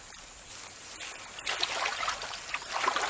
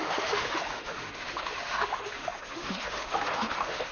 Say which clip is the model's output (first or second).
second